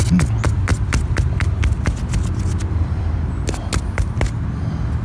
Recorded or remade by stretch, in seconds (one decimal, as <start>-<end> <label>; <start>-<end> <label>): 0.0-5.0 recorded